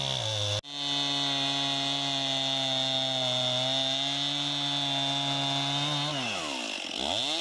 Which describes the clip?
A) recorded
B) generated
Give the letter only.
A